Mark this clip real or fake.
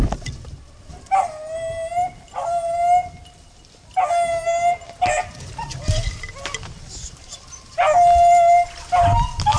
real